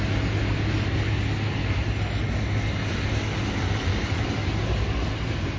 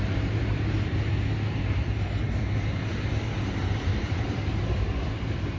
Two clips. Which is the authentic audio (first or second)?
first